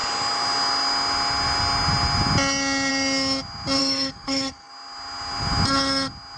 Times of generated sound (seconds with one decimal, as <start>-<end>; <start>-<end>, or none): 3.8-4.7